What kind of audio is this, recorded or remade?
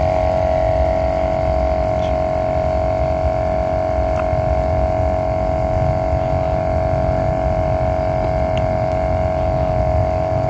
recorded